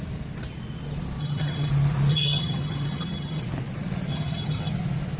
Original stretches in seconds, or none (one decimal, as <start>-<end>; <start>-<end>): 0.0-1.2; 1.7-2.1; 3.4-4.1; 4.7-5.2

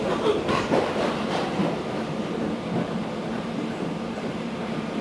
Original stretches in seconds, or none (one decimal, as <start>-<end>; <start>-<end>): none

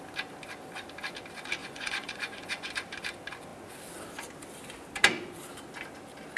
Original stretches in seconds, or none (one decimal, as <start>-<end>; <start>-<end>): 0.0-1.6; 2.7-6.4

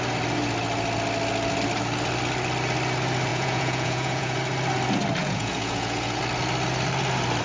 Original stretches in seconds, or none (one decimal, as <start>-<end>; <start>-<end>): 0.0-3.3; 4.4-5.2; 6.2-7.4

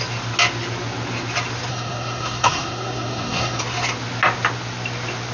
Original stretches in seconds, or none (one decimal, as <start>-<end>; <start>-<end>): 0.0-1.7; 3.6-5.3

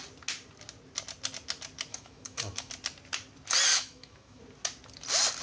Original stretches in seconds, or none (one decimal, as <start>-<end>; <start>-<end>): 0.0-1.9; 2.7-3.7; 4.4-5.4

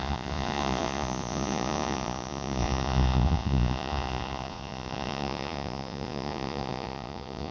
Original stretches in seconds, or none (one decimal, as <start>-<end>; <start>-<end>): none